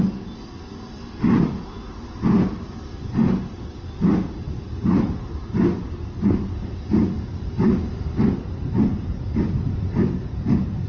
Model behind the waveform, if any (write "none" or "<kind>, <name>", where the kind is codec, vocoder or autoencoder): none